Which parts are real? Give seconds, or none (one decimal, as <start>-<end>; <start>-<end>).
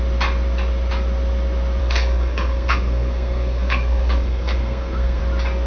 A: 0.0-1.8; 5.2-5.7